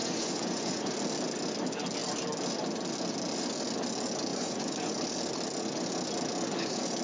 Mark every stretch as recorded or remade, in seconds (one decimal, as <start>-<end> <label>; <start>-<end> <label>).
0.0-0.9 remade; 0.9-4.3 recorded; 4.3-4.9 remade; 4.9-7.0 recorded